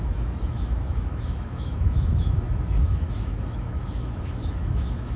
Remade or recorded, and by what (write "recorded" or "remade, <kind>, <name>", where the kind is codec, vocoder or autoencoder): remade, autoencoder, DAC-VAE